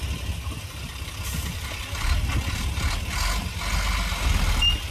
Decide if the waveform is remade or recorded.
recorded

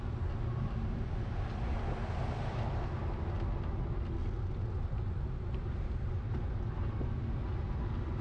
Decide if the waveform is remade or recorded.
recorded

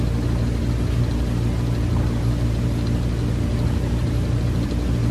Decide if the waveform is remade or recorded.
recorded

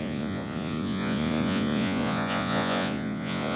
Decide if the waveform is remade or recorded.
remade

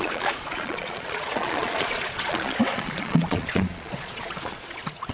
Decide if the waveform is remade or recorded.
remade